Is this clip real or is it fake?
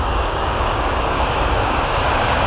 fake